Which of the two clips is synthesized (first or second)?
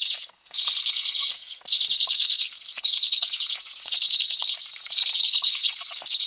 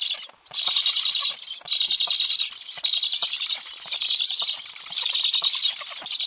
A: first